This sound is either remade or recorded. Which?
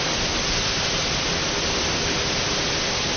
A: recorded